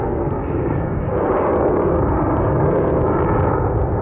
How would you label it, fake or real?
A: fake